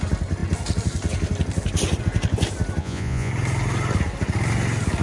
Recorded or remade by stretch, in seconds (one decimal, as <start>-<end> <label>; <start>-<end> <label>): 0.0-2.8 recorded; 2.8-3.3 remade; 3.3-5.0 recorded